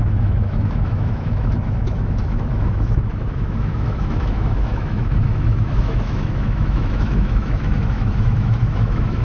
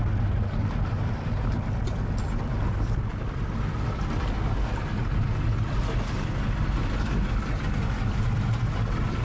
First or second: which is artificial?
first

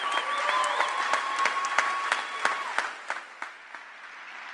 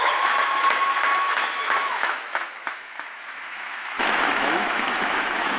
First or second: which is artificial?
second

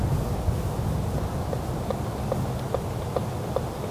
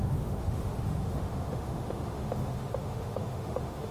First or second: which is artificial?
second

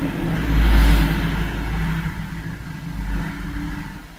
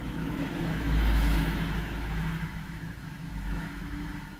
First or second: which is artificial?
second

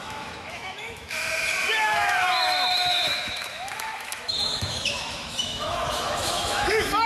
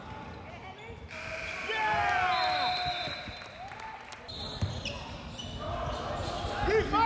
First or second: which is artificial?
first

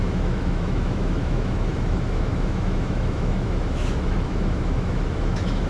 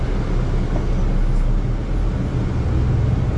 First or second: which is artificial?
first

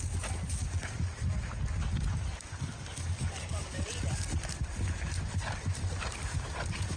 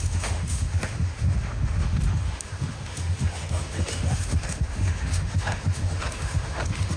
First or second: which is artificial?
second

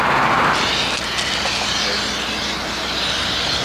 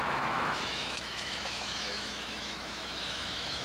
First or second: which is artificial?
second